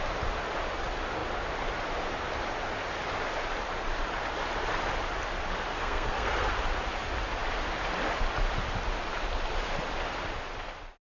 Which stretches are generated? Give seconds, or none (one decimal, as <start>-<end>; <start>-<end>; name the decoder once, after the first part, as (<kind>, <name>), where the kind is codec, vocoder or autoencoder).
5.7-6.5 (codec, SNAC)